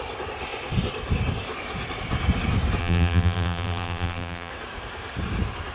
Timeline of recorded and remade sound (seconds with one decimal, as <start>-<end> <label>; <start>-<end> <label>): 0.0-2.8 recorded; 2.8-4.5 remade; 4.5-5.7 recorded